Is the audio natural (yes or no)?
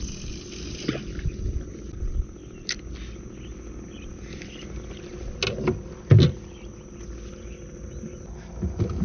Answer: yes